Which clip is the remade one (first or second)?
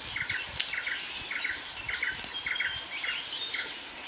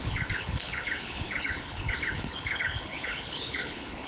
second